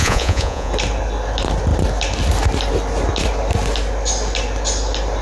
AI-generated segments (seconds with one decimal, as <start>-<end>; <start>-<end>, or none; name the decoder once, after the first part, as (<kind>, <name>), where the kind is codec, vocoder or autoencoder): 0.0-0.7 (vocoder, Vocos)